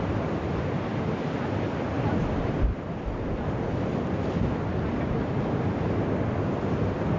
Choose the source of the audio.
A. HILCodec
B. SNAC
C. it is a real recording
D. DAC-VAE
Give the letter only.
C